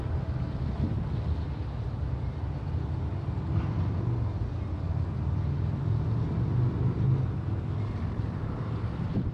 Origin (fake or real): real